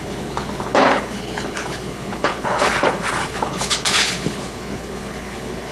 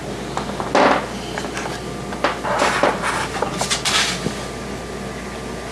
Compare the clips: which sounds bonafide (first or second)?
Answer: second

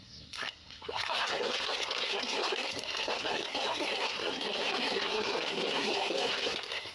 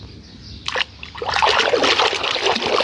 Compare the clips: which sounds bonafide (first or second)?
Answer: second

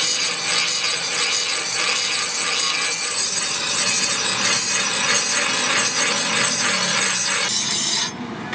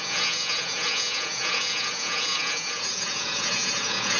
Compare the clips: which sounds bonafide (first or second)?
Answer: first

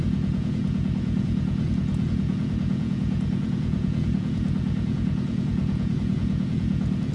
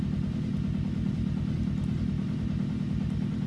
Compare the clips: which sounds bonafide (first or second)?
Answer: second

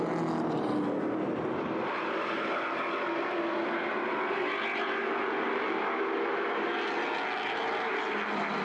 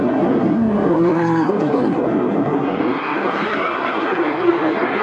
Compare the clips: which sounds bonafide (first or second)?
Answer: first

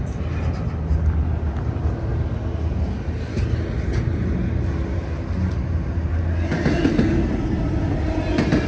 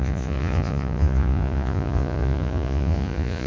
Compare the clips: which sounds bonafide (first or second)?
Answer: first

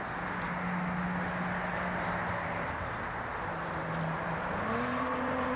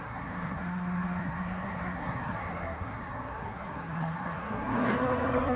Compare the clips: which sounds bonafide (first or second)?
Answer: first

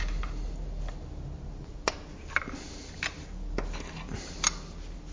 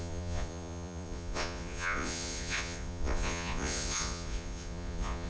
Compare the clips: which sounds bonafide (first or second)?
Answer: first